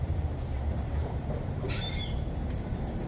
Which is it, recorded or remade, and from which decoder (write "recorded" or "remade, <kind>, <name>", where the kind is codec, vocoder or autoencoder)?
remade, vocoder, BigVGAN v2